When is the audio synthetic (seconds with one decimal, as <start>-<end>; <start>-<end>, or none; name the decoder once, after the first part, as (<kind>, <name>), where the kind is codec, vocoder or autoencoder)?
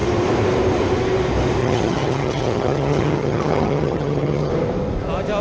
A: 1.6-4.5 (vocoder, HiFi-GAN)